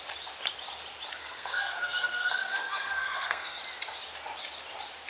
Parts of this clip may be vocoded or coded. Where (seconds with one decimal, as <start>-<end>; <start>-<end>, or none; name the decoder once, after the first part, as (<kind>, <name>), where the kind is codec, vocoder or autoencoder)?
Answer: 1.2-3.6 (codec, SNAC)